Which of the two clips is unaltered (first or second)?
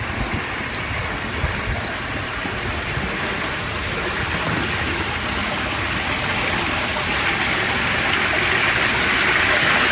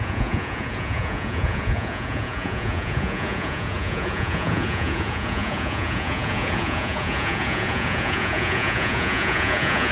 first